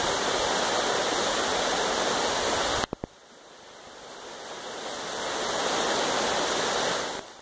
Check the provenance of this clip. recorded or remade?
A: recorded